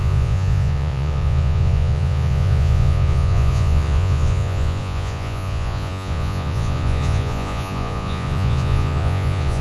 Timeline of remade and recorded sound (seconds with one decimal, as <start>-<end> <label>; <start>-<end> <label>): 0.0-9.6 remade